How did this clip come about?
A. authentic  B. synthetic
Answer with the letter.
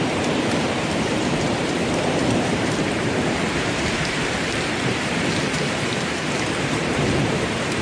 B